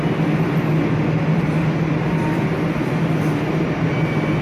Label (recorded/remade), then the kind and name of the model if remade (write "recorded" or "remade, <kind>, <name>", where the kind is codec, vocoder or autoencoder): recorded